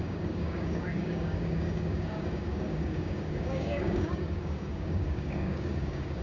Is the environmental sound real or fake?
fake